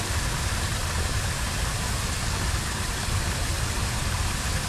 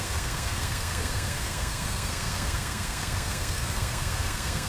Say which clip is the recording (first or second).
first